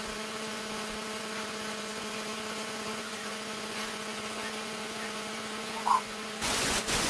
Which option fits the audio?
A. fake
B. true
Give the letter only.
A